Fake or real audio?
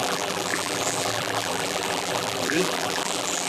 fake